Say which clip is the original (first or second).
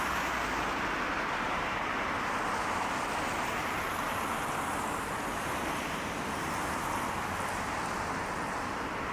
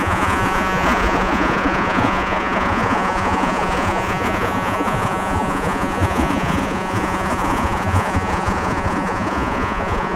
first